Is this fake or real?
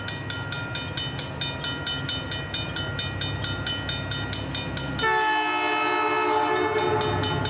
real